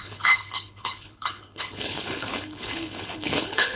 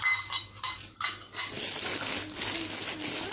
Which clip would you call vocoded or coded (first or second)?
first